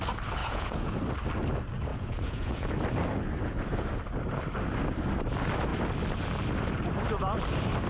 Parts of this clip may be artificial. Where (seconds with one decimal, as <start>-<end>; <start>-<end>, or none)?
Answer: 0.4-1.0; 1.9-2.7